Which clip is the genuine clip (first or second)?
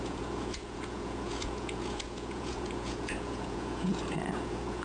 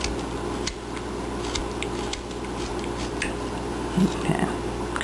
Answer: second